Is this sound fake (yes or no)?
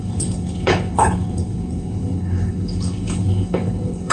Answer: yes